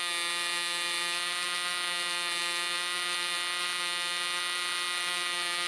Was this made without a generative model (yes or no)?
yes